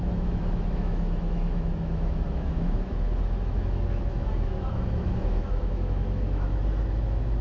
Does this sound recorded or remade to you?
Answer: remade